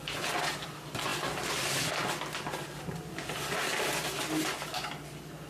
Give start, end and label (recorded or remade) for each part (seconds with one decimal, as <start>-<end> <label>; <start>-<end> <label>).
0.0-5.5 recorded